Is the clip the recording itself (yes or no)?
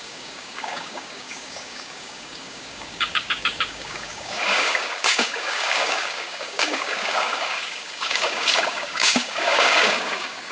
no